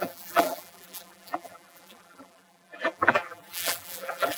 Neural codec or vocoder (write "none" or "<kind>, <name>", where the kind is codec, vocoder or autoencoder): vocoder, BigVGAN v2